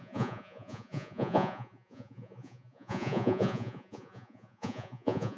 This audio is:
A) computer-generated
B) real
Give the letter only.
A